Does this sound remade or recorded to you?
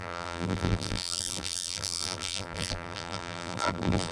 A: remade